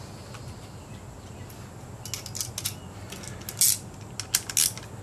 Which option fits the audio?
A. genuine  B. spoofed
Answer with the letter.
A